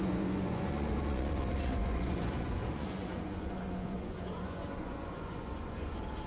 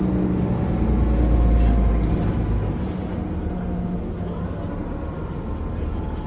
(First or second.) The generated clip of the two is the first